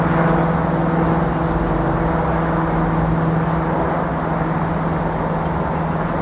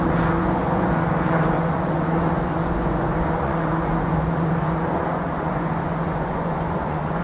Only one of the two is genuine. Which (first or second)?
first